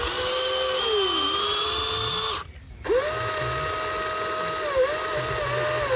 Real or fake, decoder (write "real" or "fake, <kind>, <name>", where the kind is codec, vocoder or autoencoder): real